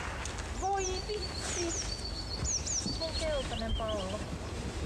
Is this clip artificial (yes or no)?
no